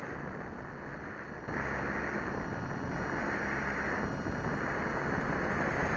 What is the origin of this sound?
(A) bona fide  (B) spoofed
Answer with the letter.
A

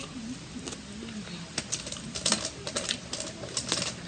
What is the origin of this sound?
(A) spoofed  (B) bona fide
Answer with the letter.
B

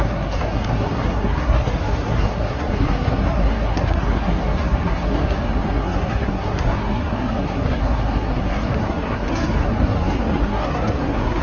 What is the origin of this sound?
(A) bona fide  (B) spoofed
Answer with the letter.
B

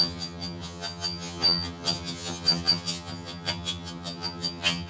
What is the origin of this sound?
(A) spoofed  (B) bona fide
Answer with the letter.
A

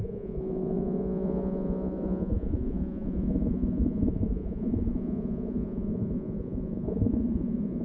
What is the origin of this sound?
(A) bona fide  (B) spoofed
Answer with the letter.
B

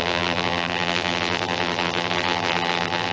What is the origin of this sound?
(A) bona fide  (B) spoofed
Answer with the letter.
B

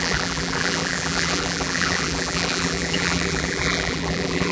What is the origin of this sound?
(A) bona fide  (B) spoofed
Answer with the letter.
B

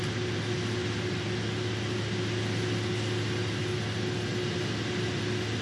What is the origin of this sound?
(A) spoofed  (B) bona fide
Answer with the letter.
B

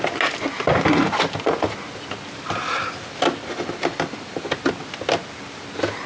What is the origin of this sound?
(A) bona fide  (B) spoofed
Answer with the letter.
A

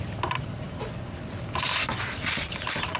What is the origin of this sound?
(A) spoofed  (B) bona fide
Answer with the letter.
B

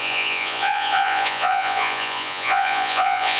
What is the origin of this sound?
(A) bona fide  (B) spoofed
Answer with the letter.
B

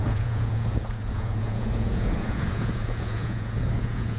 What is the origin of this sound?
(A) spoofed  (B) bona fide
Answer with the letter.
A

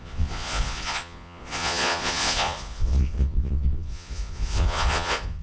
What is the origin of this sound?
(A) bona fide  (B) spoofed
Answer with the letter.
B